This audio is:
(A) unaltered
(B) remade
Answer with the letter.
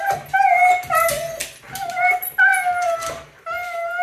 A